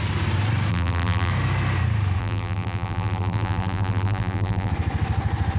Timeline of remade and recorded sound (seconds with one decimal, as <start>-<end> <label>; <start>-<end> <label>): 0.0-0.7 recorded; 0.7-1.3 remade; 1.3-2.2 recorded; 2.2-4.7 remade; 4.7-5.6 recorded